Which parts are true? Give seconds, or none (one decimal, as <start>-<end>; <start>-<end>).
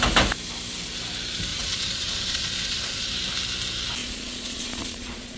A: 0.0-1.5; 3.1-4.0